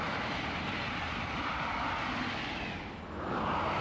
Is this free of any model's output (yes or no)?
yes